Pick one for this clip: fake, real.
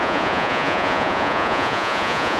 fake